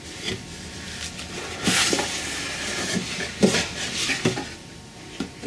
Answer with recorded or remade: recorded